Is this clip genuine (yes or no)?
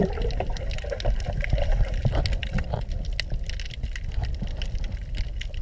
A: yes